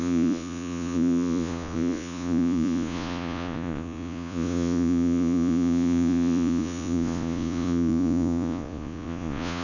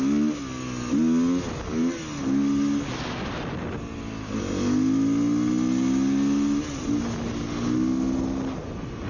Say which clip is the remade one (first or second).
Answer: first